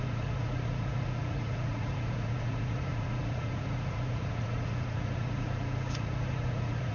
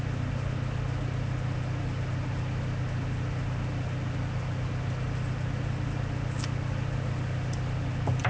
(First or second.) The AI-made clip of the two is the first